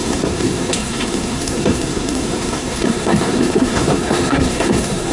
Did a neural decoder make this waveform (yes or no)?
yes